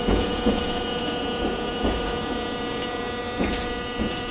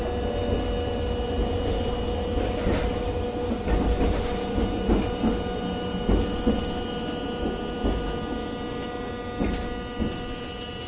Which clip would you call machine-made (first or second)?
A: first